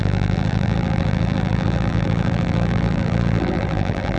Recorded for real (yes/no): no